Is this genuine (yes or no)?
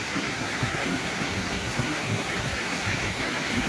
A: no